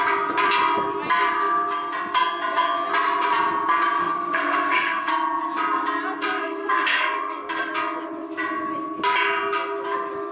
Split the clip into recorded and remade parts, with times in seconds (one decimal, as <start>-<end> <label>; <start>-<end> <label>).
0.0-4.0 recorded; 4.0-5.1 remade; 5.1-6.4 recorded; 6.4-7.7 remade; 7.7-10.3 recorded